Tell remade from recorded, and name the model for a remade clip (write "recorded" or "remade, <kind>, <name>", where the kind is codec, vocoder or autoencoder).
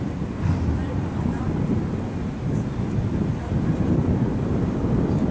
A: recorded